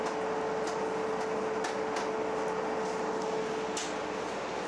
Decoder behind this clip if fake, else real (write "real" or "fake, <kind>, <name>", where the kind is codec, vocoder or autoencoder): real